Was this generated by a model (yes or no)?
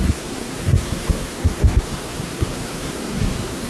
yes